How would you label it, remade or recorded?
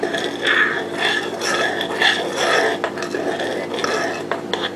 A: recorded